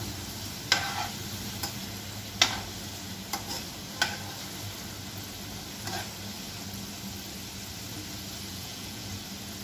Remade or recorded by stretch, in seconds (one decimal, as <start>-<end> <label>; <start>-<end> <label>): 0.0-8.5 recorded; 8.5-9.1 remade; 9.1-9.6 recorded